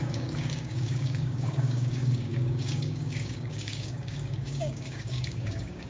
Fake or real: fake